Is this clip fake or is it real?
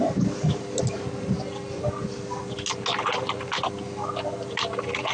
real